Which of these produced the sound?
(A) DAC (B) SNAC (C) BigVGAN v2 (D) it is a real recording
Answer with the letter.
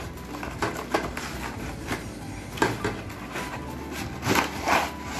D